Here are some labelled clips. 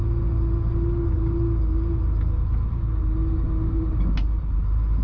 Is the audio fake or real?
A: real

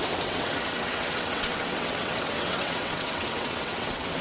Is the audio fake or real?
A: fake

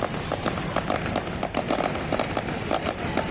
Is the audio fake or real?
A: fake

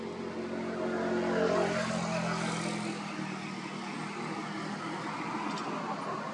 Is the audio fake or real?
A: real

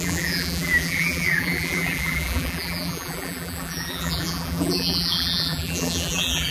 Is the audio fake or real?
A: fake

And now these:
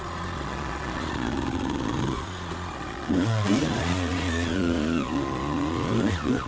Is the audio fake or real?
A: fake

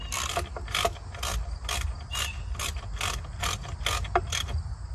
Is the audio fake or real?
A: real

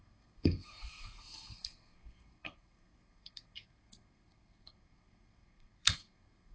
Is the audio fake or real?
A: fake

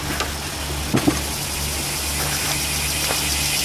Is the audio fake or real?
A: real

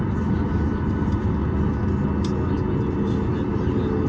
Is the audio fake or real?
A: real